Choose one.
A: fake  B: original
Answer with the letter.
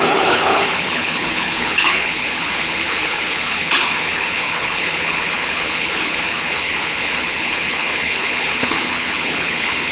A